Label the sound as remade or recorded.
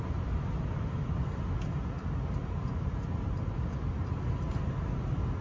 recorded